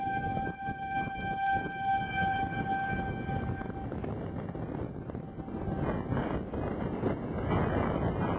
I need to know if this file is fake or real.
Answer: real